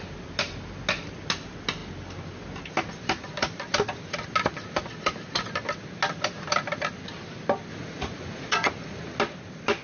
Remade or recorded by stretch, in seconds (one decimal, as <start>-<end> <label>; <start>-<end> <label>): 0.0-7.7 recorded; 7.7-9.2 remade; 9.2-9.8 recorded